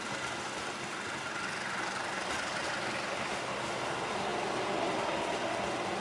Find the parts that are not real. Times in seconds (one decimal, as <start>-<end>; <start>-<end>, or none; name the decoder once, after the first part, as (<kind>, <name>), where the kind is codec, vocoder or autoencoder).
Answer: none